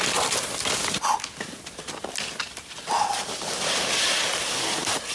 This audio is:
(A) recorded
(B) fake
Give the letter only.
A